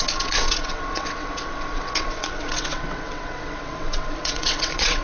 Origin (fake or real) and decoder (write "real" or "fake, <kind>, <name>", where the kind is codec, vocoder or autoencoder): fake, vocoder, WaveNeXt